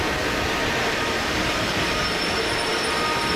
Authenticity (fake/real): fake